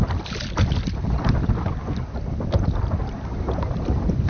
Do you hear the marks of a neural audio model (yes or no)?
no